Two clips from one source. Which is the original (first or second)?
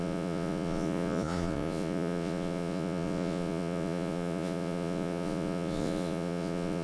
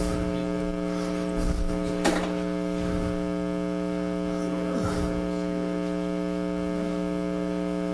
second